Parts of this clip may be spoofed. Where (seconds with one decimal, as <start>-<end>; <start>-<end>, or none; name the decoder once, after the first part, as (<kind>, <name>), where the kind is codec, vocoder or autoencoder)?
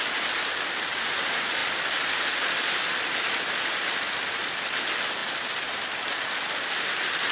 none